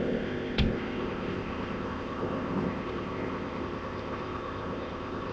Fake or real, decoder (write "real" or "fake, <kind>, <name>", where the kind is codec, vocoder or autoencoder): fake, codec, ZipCodec